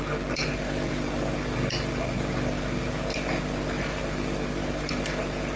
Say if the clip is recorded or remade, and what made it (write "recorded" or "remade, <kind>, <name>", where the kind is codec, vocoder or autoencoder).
recorded